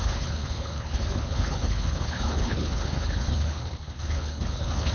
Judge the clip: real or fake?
fake